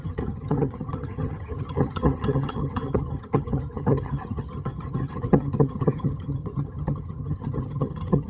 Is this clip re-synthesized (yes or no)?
yes